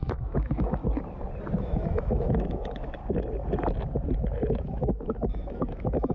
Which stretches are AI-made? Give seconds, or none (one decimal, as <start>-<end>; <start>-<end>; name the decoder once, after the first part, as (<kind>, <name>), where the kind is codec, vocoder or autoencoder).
0.0-0.8 (autoencoder, DAC-VAE); 1.6-3.0; 4.5-6.1